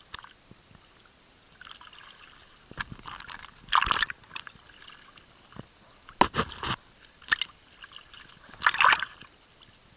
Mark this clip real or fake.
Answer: real